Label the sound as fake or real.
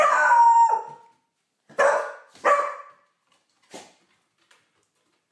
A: real